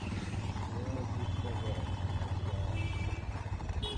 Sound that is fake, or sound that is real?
real